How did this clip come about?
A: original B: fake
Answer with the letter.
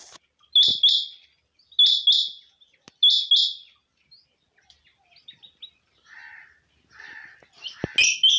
A